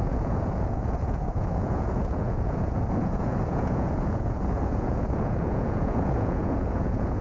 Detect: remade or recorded remade